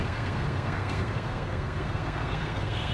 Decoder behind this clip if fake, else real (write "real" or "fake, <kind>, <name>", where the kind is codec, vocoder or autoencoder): fake, codec, SNAC